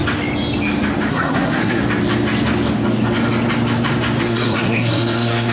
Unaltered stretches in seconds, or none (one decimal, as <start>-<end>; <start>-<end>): 0.0-1.1; 1.8-4.2